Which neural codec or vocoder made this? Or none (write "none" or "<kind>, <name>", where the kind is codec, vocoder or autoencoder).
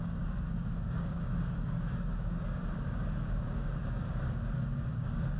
codec, DAC